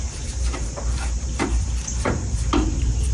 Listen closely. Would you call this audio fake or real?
fake